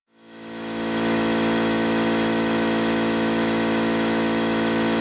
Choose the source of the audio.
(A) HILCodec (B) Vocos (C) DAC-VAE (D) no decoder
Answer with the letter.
C